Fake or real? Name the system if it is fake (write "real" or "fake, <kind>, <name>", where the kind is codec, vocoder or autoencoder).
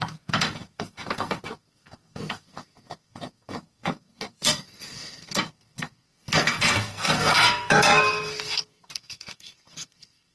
fake, codec, SNAC